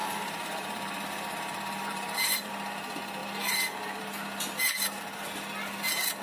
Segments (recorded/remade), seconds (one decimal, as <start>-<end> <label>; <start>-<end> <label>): 0.0-2.5 remade; 2.5-6.2 recorded